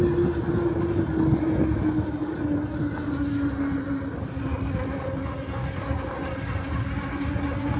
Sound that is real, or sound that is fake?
real